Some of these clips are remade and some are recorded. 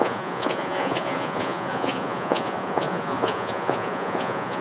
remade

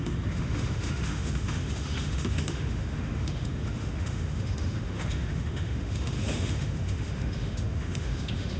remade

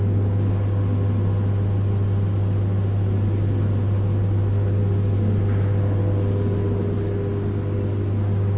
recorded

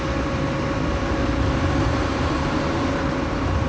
remade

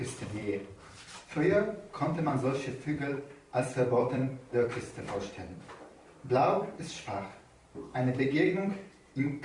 remade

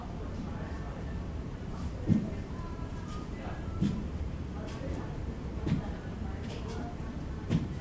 remade